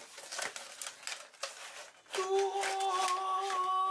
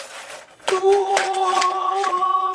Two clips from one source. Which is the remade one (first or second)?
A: second